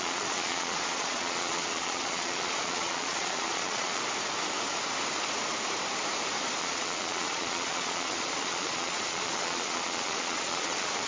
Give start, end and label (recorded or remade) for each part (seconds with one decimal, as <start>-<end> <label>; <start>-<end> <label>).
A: 0.0-4.0 remade; 4.0-6.6 recorded; 6.6-11.1 remade

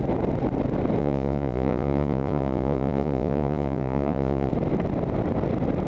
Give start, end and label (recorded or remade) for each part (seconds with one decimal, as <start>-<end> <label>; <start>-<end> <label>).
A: 0.0-1.0 recorded; 1.0-4.5 remade; 4.5-5.9 recorded

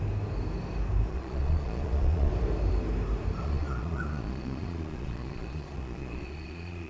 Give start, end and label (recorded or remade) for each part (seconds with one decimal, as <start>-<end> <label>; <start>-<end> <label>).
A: 0.0-1.1 recorded; 1.1-2.3 remade; 2.3-3.4 recorded; 3.4-6.9 remade

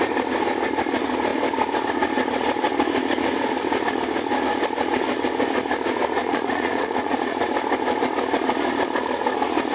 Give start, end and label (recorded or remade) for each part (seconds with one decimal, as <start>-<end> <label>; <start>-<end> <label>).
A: 0.0-6.2 recorded; 6.2-7.4 remade; 7.4-9.7 recorded

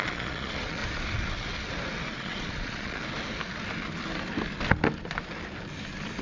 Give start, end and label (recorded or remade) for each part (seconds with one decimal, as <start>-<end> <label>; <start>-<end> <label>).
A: 0.0-0.8 remade; 0.8-2.1 recorded; 2.1-3.0 remade; 3.0-6.2 recorded

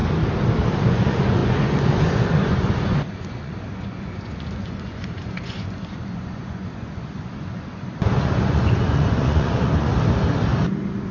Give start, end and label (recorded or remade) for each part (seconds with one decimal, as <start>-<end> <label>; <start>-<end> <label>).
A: 0.0-0.9 recorded; 0.9-9.9 remade; 9.9-11.1 recorded

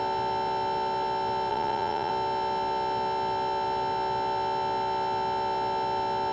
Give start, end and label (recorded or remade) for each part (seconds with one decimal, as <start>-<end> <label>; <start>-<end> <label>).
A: 0.0-1.5 recorded; 1.5-2.1 remade; 2.1-6.3 recorded

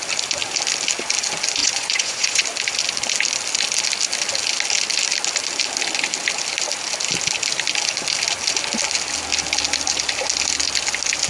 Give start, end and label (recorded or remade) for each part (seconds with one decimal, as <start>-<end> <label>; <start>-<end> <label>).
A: 0.0-1.6 recorded; 1.6-2.4 remade; 2.4-11.3 recorded